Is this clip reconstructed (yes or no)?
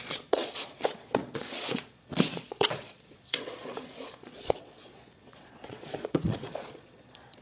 yes